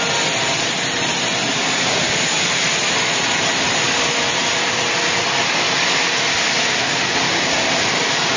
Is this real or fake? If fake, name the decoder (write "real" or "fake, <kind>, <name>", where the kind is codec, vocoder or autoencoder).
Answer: real